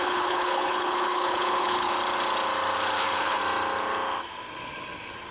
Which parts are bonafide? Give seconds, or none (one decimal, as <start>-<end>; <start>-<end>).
1.9-3.0; 3.4-5.3